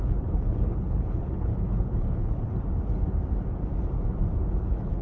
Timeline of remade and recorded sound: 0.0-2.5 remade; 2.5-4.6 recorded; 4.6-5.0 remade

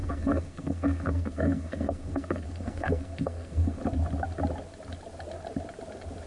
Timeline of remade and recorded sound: 0.0-3.8 remade; 3.8-6.3 recorded

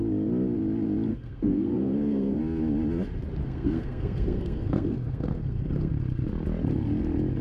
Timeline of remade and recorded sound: 0.0-1.1 recorded; 1.1-2.4 remade; 2.4-3.4 recorded; 3.4-5.9 remade; 5.9-7.4 recorded

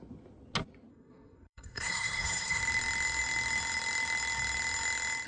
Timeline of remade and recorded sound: 0.0-0.9 recorded; 0.9-2.6 remade; 2.6-5.3 recorded

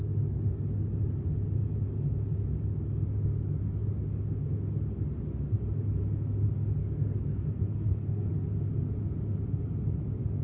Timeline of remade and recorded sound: 0.0-6.8 recorded; 6.8-8.3 remade; 8.3-10.4 recorded

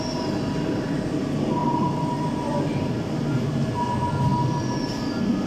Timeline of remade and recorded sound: 0.0-1.6 recorded; 1.6-2.9 remade; 2.9-5.5 recorded

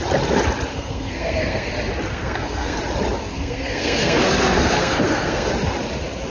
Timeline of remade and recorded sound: 0.0-0.7 recorded; 0.7-1.7 remade; 1.7-2.1 recorded; 2.1-2.8 remade; 2.8-3.2 recorded; 3.2-5.5 remade; 5.5-6.3 recorded

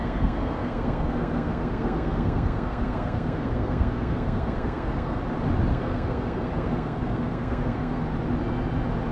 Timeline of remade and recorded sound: 0.0-5.2 remade; 5.2-5.7 recorded; 5.7-8.0 remade; 8.0-9.1 recorded